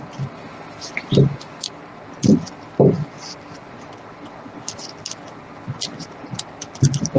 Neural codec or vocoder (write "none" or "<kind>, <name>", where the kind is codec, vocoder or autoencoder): none